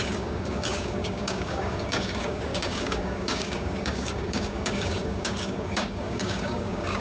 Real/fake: fake